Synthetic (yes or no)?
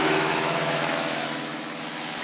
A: yes